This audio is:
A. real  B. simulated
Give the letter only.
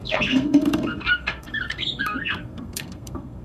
B